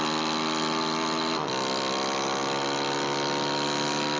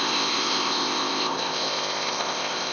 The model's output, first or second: second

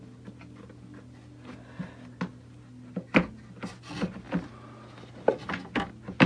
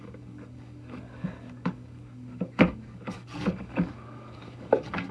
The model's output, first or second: second